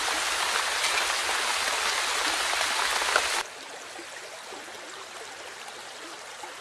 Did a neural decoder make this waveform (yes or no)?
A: no